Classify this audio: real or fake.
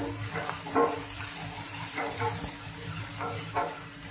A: real